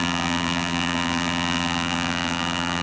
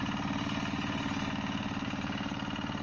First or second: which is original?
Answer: second